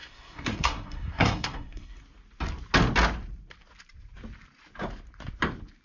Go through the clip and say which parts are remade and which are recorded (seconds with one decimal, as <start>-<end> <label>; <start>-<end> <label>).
0.0-2.0 remade; 2.0-5.8 recorded